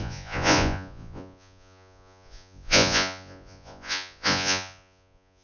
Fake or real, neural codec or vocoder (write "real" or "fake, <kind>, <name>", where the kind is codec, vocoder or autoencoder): fake, vocoder, Vocos